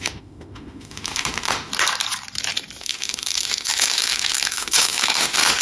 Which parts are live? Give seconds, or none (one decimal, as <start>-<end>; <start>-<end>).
1.7-2.8